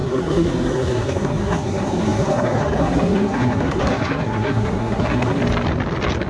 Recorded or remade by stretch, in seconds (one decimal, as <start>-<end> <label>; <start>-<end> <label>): 0.0-5.4 remade; 5.4-6.3 recorded